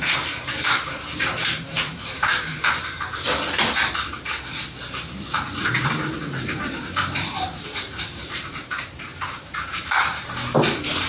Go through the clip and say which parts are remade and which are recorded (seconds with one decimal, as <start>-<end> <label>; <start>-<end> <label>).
0.0-2.3 remade; 2.3-5.5 recorded; 5.5-11.1 remade